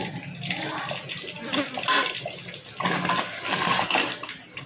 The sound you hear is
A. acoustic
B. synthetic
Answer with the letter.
A